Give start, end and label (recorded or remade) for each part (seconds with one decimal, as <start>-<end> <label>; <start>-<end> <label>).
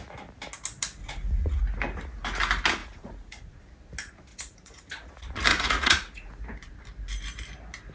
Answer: 0.0-1.0 recorded; 1.0-1.6 remade; 1.6-2.8 recorded; 2.8-3.6 remade; 3.6-4.3 recorded; 4.3-5.1 remade; 5.1-5.5 recorded; 5.5-6.3 remade; 6.3-7.9 recorded